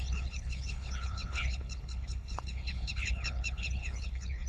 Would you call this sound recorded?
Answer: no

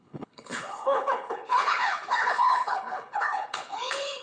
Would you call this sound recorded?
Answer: no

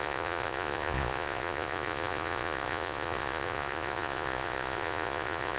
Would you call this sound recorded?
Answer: no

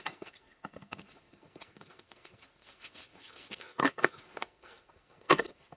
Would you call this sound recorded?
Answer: no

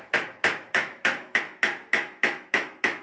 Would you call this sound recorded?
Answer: no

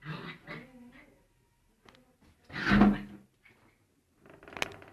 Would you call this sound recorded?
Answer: yes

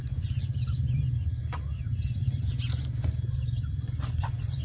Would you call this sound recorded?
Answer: no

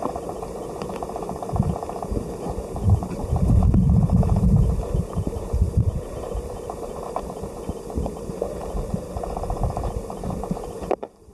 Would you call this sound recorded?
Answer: yes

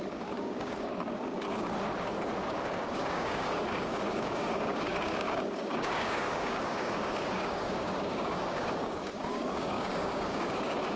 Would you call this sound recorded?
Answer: no